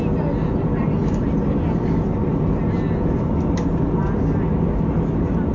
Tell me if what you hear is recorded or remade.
recorded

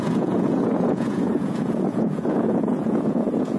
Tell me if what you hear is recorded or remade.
remade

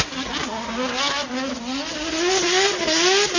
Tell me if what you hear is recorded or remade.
recorded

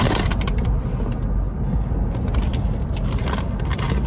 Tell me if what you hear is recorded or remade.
recorded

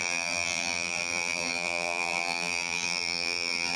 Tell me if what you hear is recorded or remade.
remade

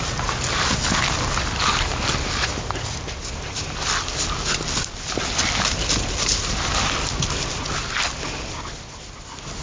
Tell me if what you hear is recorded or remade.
recorded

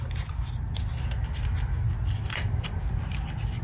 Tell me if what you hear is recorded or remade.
recorded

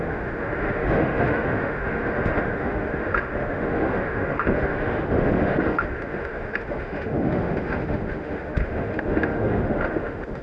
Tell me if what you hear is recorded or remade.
remade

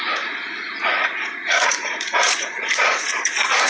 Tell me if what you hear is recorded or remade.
remade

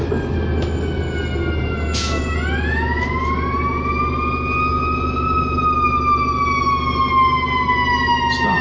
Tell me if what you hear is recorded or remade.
recorded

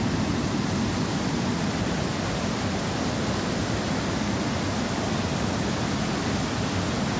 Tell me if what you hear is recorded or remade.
recorded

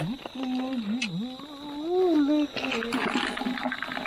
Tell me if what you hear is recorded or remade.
recorded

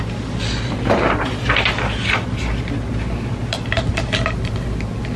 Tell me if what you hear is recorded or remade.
recorded